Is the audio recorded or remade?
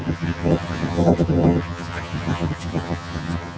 remade